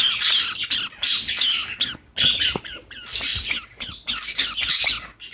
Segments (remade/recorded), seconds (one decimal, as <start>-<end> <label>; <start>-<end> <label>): 0.0-5.3 recorded